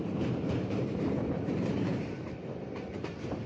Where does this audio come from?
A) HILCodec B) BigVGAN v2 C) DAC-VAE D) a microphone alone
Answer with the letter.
B